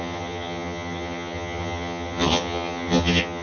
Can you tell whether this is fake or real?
fake